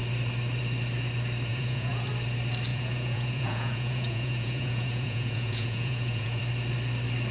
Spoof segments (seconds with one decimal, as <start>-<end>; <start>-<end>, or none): 1.5-2.1; 2.7-6.4